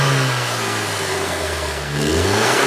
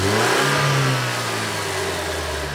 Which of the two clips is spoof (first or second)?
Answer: first